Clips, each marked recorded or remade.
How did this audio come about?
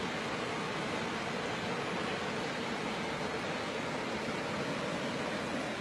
recorded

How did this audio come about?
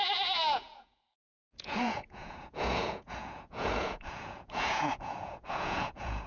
remade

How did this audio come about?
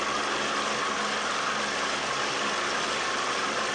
recorded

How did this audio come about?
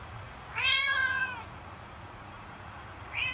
remade